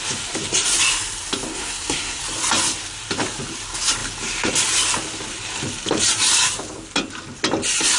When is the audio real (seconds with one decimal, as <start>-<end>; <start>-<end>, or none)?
0.0-1.5; 2.2-8.0